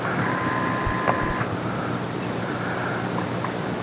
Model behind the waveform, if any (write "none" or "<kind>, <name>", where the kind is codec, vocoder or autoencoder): vocoder, BigVGAN v2